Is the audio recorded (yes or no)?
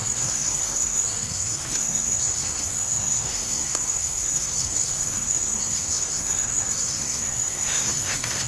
no